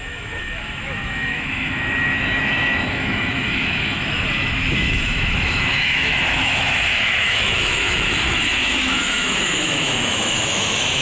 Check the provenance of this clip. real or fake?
fake